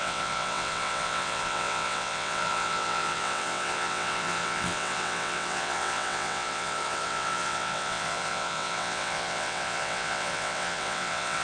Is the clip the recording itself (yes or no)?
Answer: no